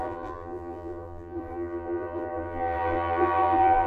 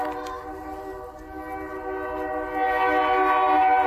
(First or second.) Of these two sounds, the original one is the second